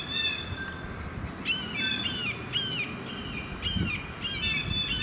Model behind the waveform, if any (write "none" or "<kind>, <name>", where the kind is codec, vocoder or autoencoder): none